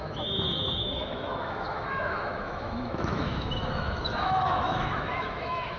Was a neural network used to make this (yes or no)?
yes